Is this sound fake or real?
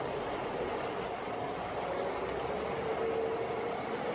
real